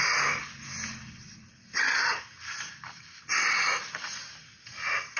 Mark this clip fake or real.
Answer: real